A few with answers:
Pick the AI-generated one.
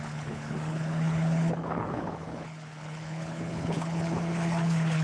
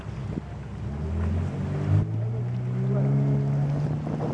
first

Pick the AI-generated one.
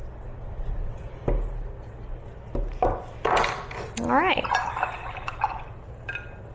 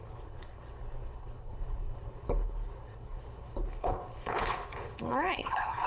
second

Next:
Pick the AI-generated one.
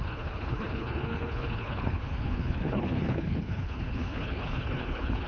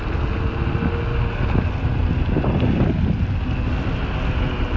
first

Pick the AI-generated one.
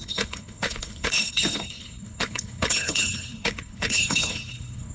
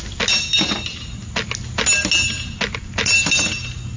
first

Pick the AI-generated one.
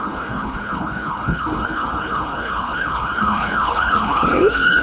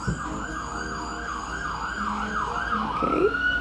first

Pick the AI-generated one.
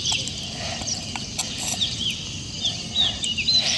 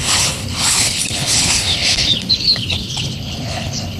second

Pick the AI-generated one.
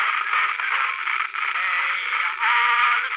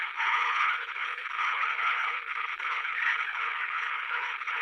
second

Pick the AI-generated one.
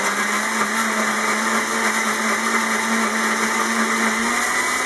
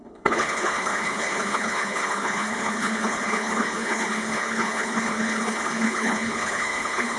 second